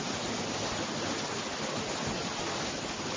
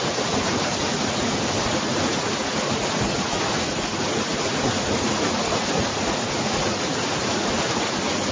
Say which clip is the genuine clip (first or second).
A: first